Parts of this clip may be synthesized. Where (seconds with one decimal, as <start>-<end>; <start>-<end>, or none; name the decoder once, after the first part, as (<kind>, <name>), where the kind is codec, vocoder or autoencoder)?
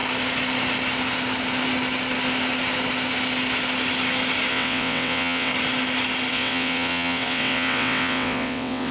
4.5-5.5 (vocoder, WaveNeXt); 6.3-8.9